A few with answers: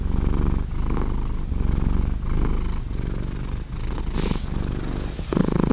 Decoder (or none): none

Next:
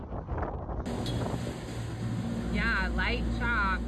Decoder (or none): none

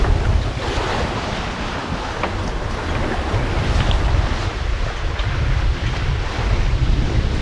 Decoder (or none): vocoder, BigVGAN v2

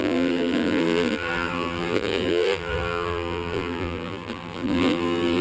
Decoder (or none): vocoder, BigVGAN v2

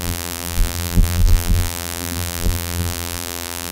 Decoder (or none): vocoder, BigVGAN v2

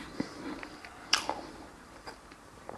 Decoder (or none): vocoder, BigVGAN v2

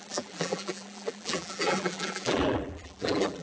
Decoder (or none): vocoder, BigVGAN v2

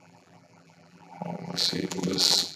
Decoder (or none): vocoder, BigVGAN v2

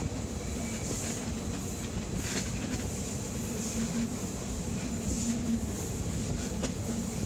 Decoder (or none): none